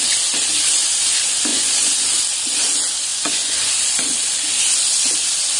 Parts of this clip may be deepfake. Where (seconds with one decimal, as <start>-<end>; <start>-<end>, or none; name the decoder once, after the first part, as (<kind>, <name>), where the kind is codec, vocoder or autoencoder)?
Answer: 1.5-2.0 (vocoder, Vocos); 3.1-3.7